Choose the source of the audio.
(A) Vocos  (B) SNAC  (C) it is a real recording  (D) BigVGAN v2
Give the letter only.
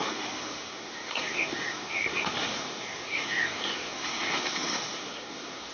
B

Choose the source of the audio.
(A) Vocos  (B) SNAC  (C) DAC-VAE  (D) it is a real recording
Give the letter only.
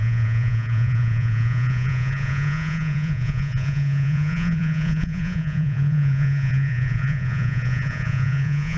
A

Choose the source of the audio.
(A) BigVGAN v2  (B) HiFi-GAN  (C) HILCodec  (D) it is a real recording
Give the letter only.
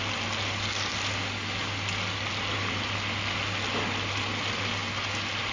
D